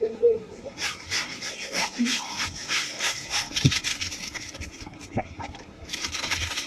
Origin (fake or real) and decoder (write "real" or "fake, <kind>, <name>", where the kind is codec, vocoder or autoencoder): fake, codec, SNAC